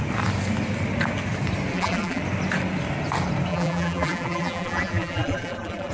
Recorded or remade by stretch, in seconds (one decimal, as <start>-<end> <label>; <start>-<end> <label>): 0.0-1.7 recorded; 1.7-2.2 remade; 2.2-3.5 recorded; 3.5-5.9 remade